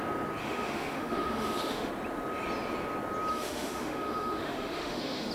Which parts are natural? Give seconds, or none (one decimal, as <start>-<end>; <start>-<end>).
0.0-0.4; 1.9-3.3